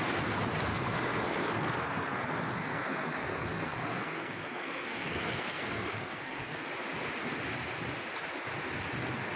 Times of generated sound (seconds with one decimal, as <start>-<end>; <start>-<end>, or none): 0.7-2.2; 2.6-6.7